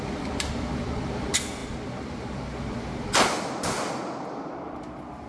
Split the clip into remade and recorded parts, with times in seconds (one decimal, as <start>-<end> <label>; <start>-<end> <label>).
0.0-5.3 recorded